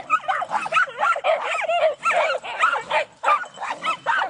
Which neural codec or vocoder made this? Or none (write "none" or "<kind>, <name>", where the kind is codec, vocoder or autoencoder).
none